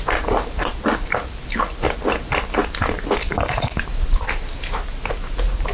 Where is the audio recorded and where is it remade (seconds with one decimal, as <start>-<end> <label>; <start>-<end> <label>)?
0.0-3.2 recorded; 3.2-3.8 remade; 3.8-5.7 recorded